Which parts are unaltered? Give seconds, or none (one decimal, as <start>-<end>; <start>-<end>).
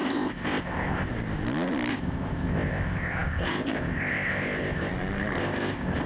1.1-1.9; 4.9-5.4